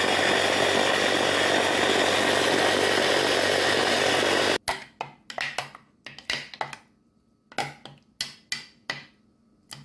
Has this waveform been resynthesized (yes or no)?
no